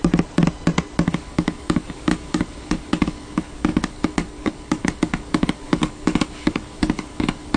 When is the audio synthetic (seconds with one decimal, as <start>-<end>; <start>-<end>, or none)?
1.1-7.6